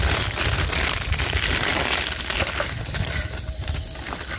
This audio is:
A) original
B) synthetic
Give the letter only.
A